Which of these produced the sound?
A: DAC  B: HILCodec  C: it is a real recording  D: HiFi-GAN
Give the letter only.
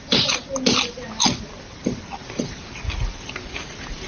C